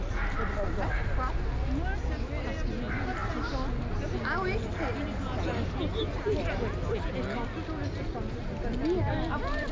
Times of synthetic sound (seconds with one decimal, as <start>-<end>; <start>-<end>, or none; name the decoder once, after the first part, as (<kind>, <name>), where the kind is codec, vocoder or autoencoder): none

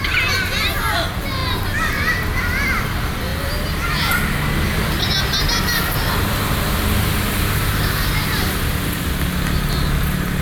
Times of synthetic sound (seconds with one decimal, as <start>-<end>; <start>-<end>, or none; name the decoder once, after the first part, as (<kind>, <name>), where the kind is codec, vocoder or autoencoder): none

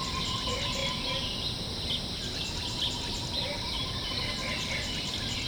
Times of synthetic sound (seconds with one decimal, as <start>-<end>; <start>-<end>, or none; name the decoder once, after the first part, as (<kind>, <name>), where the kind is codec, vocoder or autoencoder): none

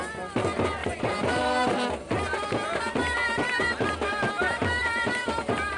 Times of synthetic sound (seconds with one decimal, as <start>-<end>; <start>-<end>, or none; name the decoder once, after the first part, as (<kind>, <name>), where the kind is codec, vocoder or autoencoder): 0.8-4.3 (vocoder, BigVGAN v2); 4.8-5.8

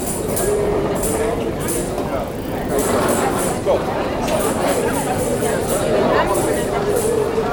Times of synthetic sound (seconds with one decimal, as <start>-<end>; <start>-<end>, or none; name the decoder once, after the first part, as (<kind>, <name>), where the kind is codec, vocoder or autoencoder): 0.0-7.5 (vocoder, BigVGAN v2)

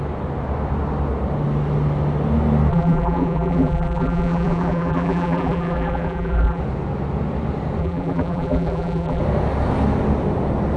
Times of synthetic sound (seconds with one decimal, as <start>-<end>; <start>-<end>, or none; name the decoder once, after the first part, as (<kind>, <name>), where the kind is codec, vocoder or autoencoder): 2.7-6.6 (vocoder, BigVGAN v2); 7.8-9.2